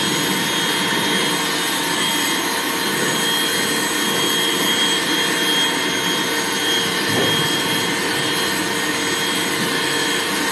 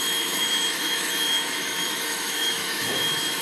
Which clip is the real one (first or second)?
first